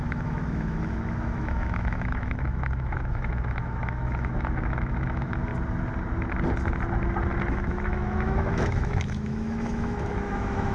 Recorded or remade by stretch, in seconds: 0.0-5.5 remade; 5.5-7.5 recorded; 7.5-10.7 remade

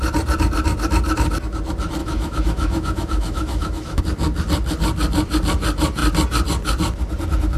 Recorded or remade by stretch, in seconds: 0.0-2.0 recorded; 2.0-4.0 remade; 4.0-7.6 recorded

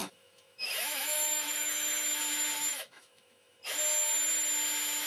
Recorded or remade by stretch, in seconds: 0.0-2.2 remade; 2.2-2.7 recorded; 2.7-3.6 remade; 3.6-5.1 recorded

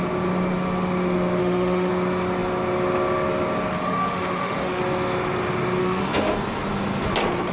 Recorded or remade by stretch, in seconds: 0.0-1.4 recorded; 1.4-1.9 remade; 1.9-3.8 recorded; 3.8-4.8 remade; 4.8-5.8 recorded; 5.8-6.4 remade; 6.4-7.5 recorded

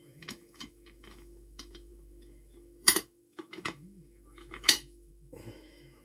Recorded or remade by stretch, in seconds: 0.0-6.0 remade